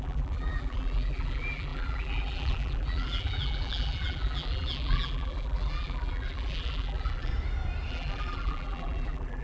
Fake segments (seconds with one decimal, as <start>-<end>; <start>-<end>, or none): 0.0-7.3; 7.9-9.4